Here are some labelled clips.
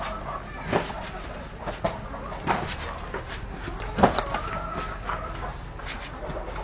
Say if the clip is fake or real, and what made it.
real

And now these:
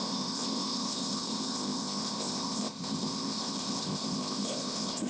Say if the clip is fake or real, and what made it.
fake, codec, ZipCodec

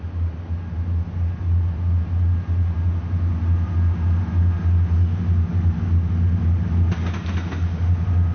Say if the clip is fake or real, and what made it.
real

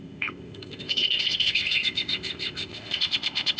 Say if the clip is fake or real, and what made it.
fake, codec, ZipCodec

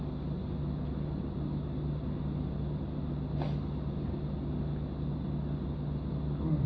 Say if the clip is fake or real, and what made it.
real